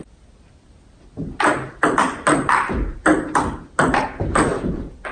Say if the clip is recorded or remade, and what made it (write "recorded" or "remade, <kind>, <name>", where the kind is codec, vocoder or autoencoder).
recorded